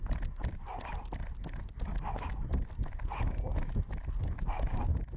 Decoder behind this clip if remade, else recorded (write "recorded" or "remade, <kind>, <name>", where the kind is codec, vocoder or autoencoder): recorded